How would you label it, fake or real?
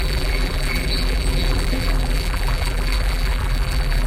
fake